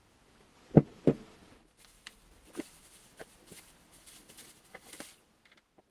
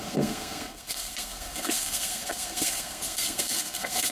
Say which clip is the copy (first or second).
second